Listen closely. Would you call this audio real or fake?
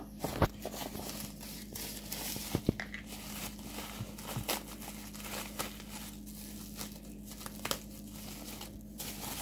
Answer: real